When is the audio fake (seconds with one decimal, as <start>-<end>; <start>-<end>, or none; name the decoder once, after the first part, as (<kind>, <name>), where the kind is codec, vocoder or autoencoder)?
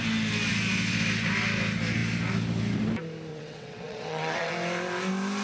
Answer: 3.3-4.5 (vocoder, WaveNeXt)